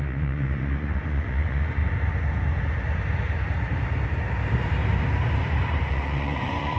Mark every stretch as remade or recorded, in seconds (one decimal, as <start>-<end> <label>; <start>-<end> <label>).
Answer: 0.0-1.8 remade; 1.8-5.9 recorded; 5.9-6.8 remade